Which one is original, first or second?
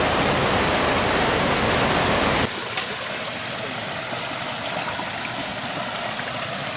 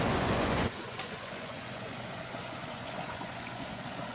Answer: first